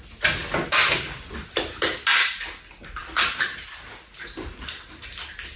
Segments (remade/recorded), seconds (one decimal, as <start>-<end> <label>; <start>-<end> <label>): 0.0-5.6 recorded

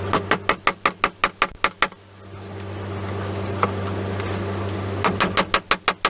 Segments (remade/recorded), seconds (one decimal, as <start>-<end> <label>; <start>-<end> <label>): 0.0-6.1 recorded

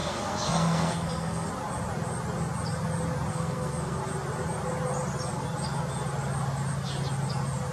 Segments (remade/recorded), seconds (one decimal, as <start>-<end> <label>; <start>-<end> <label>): 0.0-1.5 remade; 1.5-3.3 recorded; 3.3-4.0 remade; 4.0-7.7 recorded

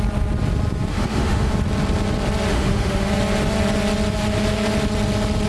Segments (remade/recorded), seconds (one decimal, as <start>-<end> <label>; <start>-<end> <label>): 0.0-0.9 recorded; 0.9-1.5 remade; 1.5-2.5 recorded; 2.5-3.1 remade; 3.1-5.5 recorded